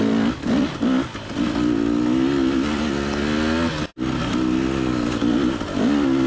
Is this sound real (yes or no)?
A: yes